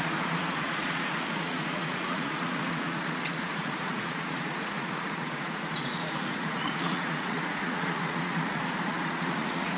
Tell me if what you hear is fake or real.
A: fake